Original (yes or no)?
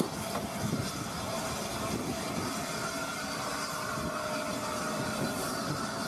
yes